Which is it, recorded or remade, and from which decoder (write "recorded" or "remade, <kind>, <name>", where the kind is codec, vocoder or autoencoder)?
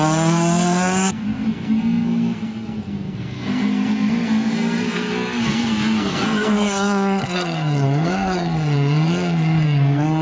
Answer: remade, codec, SNAC